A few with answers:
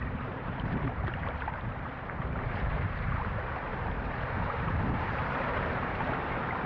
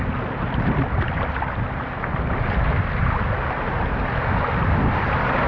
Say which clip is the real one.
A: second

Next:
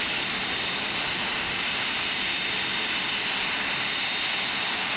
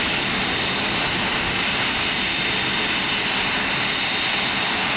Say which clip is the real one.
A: second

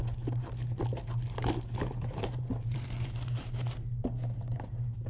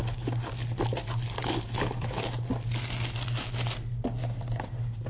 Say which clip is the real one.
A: second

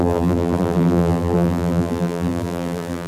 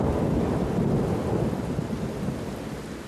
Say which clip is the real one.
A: second